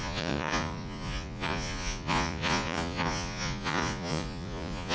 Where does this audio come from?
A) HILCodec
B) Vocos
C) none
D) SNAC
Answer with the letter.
B